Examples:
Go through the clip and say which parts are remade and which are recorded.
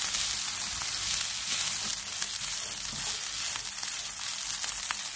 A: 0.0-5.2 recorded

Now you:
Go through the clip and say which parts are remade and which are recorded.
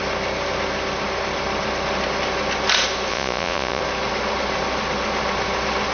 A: 0.0-3.1 recorded; 3.1-3.8 remade; 3.8-5.9 recorded